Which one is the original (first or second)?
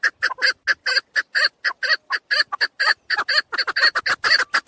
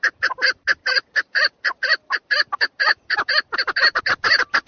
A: first